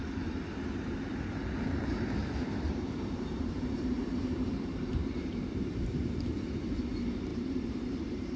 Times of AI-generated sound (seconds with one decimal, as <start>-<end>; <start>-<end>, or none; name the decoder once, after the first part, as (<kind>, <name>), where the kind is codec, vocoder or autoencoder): 2.2-6.2 (vocoder, BigVGAN v2); 7.3-8.4